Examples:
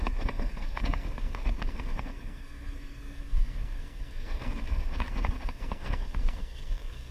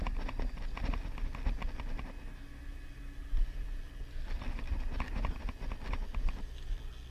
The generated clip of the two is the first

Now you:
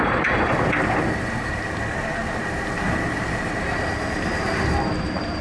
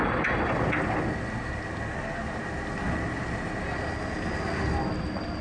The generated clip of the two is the first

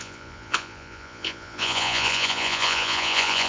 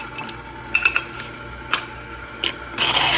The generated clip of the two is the first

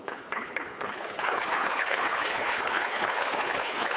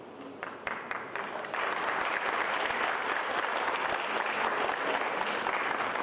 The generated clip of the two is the first